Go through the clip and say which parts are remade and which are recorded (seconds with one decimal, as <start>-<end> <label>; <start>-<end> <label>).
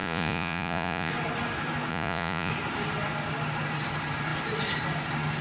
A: 0.0-1.1 remade; 1.1-1.9 recorded; 1.9-2.5 remade; 2.5-5.4 recorded